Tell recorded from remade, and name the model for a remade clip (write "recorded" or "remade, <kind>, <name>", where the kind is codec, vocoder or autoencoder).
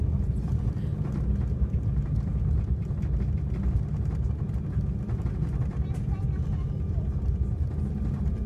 recorded